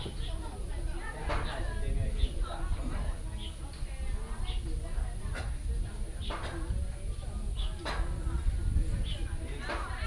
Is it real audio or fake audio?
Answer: real